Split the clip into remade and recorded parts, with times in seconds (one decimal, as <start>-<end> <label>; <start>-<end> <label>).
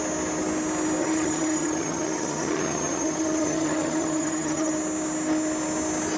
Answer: 0.0-1.0 recorded; 1.0-4.7 remade; 4.7-6.2 recorded